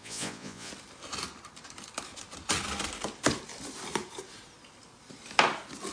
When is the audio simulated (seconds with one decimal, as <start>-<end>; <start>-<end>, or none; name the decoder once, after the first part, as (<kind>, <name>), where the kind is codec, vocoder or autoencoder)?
0.0-0.7 (vocoder, Vocos)